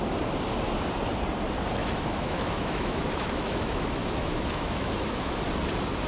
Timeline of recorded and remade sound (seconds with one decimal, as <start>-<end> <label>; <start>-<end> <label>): 0.0-1.8 recorded; 1.8-5.3 remade; 5.3-6.1 recorded